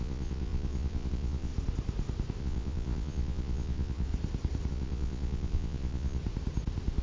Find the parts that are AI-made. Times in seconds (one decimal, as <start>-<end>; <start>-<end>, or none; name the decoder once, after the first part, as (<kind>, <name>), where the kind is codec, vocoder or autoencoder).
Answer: 0.0-1.5 (vocoder, Vocos); 2.4-4.1; 4.7-6.2